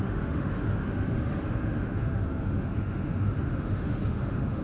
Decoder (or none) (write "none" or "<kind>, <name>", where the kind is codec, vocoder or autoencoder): autoencoder, DAC-VAE